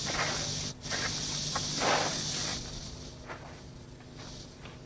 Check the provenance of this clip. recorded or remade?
recorded